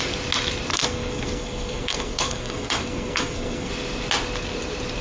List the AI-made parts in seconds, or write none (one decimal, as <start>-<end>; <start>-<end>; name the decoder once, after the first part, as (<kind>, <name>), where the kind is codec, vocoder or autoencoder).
0.7-3.7 (codec, SNAC)